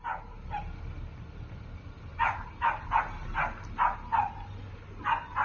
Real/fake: real